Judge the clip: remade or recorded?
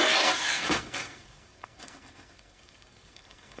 remade